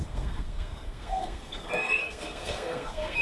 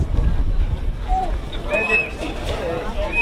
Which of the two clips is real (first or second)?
second